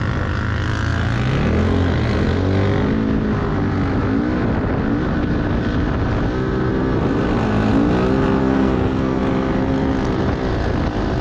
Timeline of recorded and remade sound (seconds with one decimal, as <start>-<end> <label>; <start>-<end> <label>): 0.0-8.4 recorded; 8.4-9.2 remade; 9.2-11.2 recorded

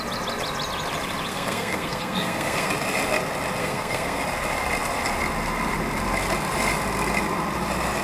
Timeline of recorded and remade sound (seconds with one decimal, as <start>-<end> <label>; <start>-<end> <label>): 0.0-1.3 recorded; 1.3-2.7 remade; 2.7-3.6 recorded; 3.6-4.2 remade; 4.2-8.0 recorded

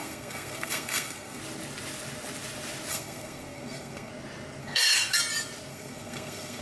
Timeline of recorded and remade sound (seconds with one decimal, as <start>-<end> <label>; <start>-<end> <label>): 0.0-1.4 remade; 1.4-2.9 recorded; 2.9-4.1 remade; 4.1-4.6 recorded; 4.6-5.2 remade; 5.2-5.7 recorded; 5.7-6.6 remade

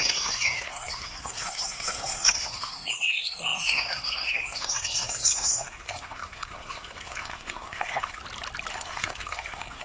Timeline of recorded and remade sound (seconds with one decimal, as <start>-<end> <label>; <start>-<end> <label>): 0.0-8.2 remade; 8.2-8.7 recorded; 8.7-9.8 remade

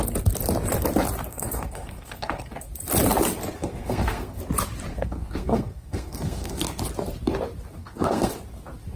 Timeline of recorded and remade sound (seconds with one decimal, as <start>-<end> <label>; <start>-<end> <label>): 0.0-1.3 recorded; 1.3-2.5 remade; 2.5-3.6 recorded; 3.6-4.4 remade; 4.4-4.9 recorded; 4.9-6.8 remade; 6.8-7.8 recorded; 7.8-8.3 remade; 8.3-9.0 recorded